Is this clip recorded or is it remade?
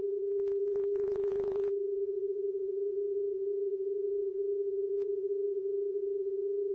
remade